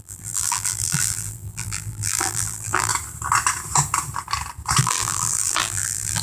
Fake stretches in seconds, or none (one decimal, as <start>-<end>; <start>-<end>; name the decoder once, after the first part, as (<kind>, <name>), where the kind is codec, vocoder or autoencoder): 0.0-2.9 (vocoder, BigVGAN v2); 4.8-6.2